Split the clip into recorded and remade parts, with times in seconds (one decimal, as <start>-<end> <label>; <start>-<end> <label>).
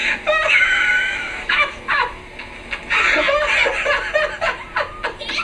0.0-0.5 recorded; 0.5-2.2 remade; 2.2-5.4 recorded